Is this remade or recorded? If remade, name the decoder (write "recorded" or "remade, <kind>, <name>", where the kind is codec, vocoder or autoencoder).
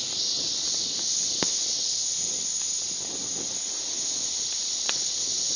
recorded